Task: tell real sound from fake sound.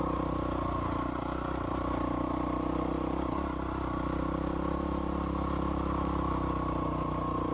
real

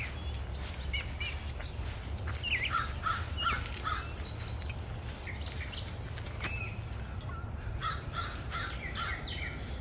real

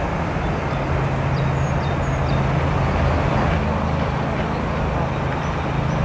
real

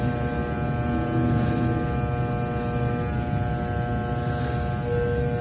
real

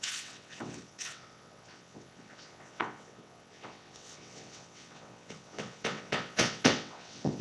fake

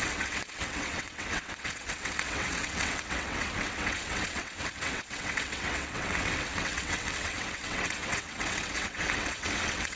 fake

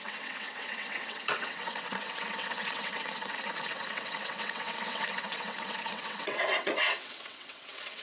fake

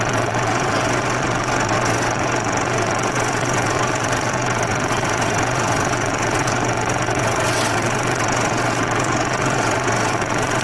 fake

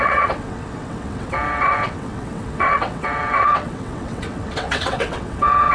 fake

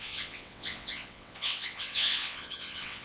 fake